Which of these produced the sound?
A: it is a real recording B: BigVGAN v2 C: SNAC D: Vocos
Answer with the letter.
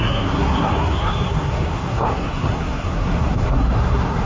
C